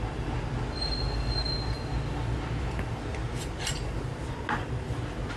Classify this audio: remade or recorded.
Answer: recorded